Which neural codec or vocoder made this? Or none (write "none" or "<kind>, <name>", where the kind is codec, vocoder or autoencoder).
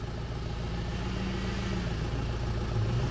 none